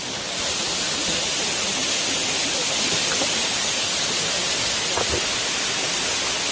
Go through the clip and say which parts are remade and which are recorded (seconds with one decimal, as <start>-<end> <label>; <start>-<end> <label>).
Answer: 0.0-6.5 recorded